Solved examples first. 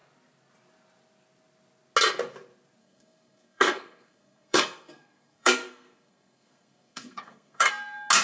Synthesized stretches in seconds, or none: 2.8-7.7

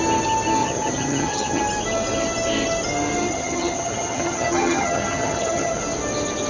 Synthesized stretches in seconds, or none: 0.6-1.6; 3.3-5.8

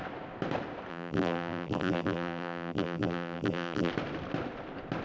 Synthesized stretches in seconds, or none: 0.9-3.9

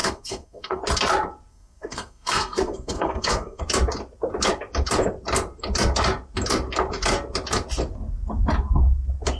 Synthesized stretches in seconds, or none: 0.0-0.8; 1.5-3.6

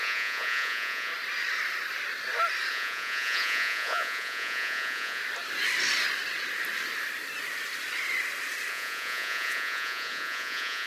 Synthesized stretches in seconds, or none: 0.0-1.1; 2.7-5.2; 8.7-10.9

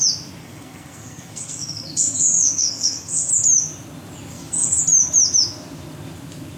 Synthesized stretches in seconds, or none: 0.4-3.3; 4.3-4.8